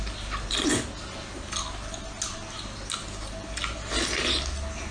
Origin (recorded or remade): recorded